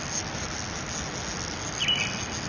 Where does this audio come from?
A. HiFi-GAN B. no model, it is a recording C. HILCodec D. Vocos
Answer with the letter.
B